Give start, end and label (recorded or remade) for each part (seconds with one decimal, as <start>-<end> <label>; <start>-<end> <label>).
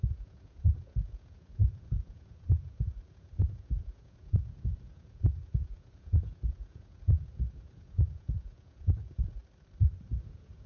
0.0-9.4 remade; 9.4-10.1 recorded; 10.1-10.7 remade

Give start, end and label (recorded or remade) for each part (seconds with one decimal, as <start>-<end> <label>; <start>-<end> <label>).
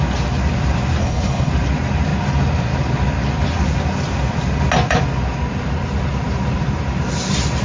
0.0-1.0 recorded; 1.0-1.5 remade; 1.5-7.6 recorded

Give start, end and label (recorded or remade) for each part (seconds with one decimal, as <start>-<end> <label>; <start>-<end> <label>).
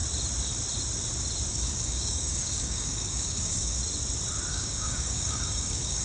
0.0-1.5 recorded; 1.5-3.8 remade; 3.8-4.5 recorded; 4.5-6.0 remade